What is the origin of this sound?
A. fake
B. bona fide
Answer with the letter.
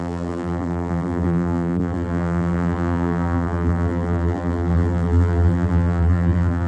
A